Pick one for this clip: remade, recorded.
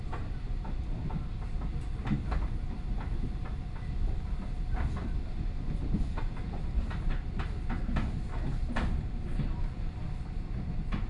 recorded